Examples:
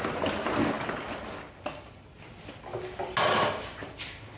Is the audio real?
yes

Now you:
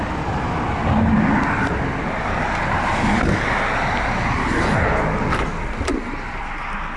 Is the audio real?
yes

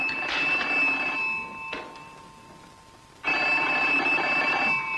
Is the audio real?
yes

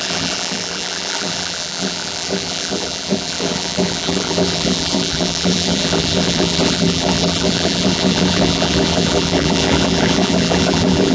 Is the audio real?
no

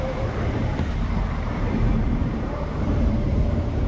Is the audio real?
no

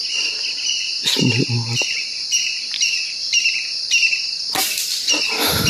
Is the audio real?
yes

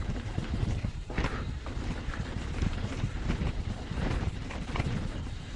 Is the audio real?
no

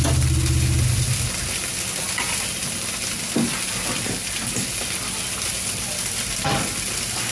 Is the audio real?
yes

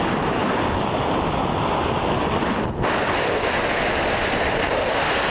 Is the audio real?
yes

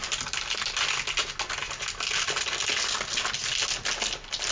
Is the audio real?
yes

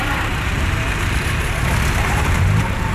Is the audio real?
no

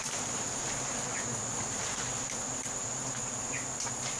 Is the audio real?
yes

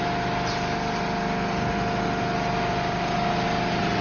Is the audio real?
yes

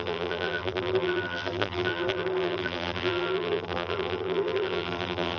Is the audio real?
no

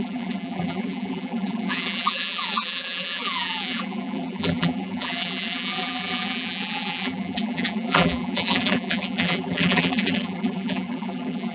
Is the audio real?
no